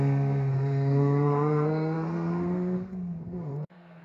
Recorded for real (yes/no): no